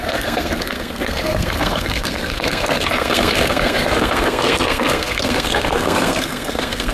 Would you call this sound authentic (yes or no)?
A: no